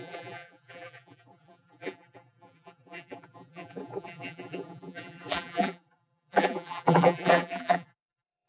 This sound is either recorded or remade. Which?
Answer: remade